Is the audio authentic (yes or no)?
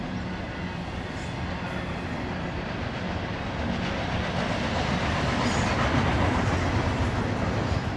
yes